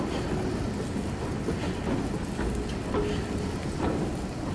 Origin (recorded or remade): recorded